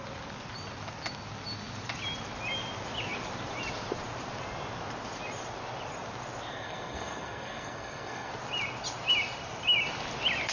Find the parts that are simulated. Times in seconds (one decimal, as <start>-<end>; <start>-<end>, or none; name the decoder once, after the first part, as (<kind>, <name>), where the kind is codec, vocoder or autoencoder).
6.5-8.3 (codec, SNAC)